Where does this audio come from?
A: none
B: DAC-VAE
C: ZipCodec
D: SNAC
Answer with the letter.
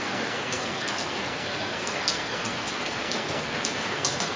D